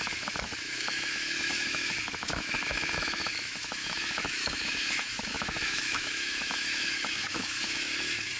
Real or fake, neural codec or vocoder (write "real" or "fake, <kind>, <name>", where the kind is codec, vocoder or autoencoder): fake, autoencoder, DAC-VAE